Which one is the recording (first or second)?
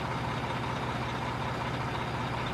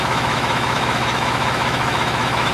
first